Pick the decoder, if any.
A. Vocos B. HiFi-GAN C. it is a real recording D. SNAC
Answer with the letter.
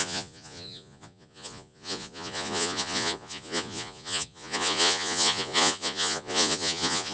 A